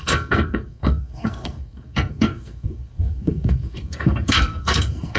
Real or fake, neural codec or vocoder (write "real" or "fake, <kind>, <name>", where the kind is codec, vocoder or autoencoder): fake, codec, SNAC